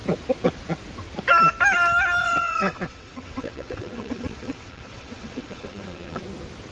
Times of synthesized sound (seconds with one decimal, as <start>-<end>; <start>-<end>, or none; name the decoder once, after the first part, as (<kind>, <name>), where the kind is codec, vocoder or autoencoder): 2.2-6.2 (vocoder, WaveNeXt)